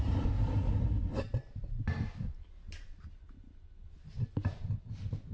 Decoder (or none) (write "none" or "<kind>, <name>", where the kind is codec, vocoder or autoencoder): none